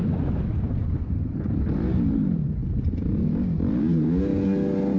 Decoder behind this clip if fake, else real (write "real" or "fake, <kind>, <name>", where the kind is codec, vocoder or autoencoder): real